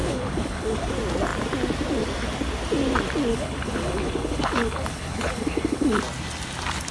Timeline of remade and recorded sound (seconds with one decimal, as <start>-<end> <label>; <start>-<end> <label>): 0.0-0.9 remade; 0.9-3.3 recorded; 3.3-6.0 remade; 6.0-6.9 recorded